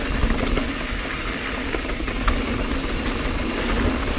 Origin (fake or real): real